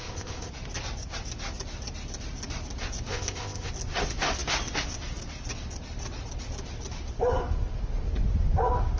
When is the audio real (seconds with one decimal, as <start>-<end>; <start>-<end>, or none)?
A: 0.5-3.1; 3.7-9.0